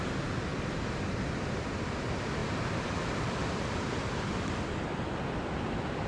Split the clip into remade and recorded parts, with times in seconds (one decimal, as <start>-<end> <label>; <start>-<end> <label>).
0.0-6.1 remade

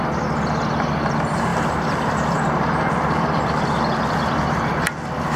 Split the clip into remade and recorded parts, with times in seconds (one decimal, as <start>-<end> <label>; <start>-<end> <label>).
0.0-1.5 recorded; 1.5-2.9 remade; 2.9-5.4 recorded